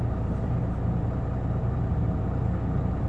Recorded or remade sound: recorded